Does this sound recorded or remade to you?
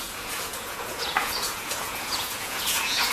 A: remade